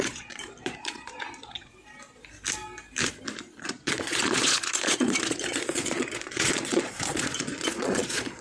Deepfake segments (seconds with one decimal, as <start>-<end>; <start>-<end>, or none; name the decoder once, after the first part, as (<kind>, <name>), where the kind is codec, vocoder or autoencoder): 0.0-1.7 (vocoder, Vocos); 3.6-8.4